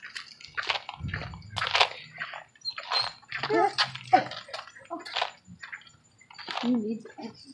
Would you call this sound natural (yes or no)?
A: yes